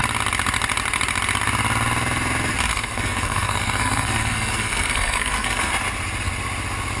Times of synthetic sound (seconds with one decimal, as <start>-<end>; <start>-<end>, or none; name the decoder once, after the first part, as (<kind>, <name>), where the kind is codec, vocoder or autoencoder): 2.7-5.7 (codec, SNAC)